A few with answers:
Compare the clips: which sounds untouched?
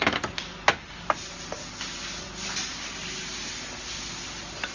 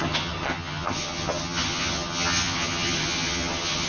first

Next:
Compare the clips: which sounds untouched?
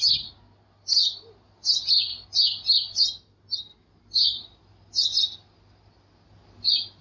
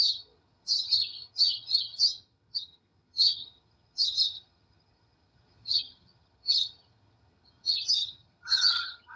first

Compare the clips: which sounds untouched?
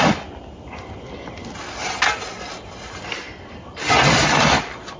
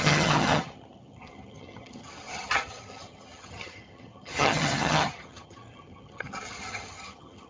first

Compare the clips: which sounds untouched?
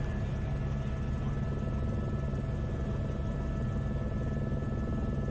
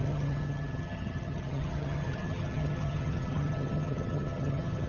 first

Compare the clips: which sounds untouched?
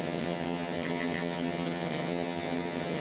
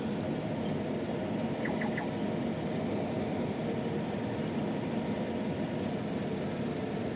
second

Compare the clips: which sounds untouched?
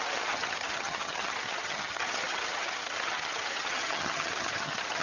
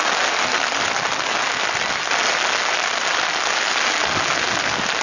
second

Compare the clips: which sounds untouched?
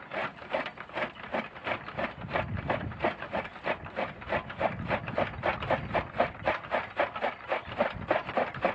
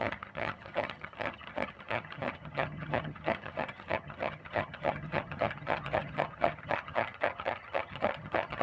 first